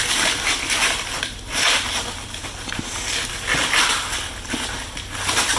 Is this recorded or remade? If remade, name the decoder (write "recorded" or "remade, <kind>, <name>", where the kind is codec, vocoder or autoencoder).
recorded